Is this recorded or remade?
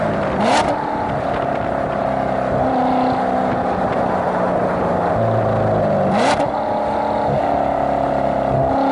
recorded